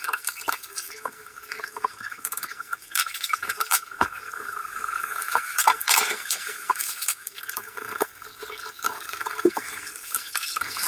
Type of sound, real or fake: fake